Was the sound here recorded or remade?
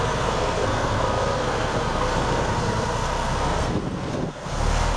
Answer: remade